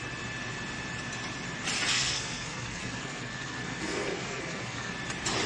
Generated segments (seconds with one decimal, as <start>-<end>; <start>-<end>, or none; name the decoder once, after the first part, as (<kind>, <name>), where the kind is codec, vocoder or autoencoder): 1.9-4.9 (codec, SNAC)